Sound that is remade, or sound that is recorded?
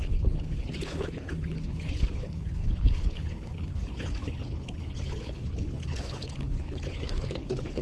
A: remade